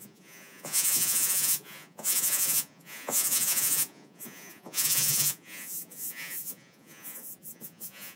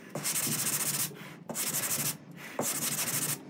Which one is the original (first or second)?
second